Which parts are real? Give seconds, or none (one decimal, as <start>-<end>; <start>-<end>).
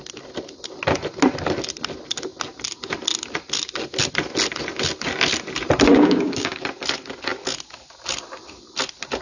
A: 0.0-5.9; 6.6-9.2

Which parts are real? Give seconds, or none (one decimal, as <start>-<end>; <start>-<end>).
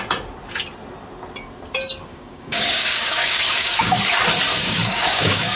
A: 0.0-2.1; 4.0-4.6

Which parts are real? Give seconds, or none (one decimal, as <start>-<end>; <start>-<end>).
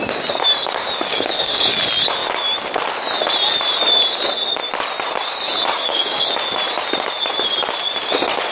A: 0.0-1.1; 1.7-5.7; 6.3-8.5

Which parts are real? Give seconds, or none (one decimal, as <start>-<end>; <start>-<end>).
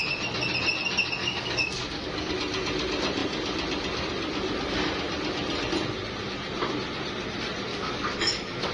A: 0.0-1.2; 2.3-7.7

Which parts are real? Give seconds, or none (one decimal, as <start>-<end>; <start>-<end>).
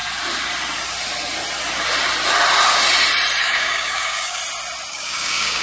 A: 0.0-3.4; 4.4-4.9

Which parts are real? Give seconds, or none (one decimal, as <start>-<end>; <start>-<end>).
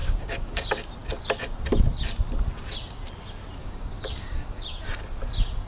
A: 0.6-3.6; 4.6-5.7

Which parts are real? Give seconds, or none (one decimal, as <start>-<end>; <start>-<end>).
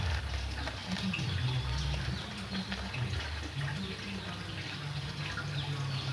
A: 0.0-6.1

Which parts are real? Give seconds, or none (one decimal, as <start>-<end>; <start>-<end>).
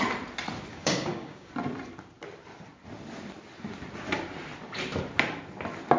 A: 0.0-0.7; 1.5-6.0